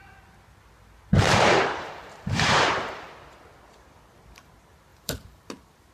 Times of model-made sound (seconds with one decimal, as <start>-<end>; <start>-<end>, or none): 1.1-3.1; 4.9-5.5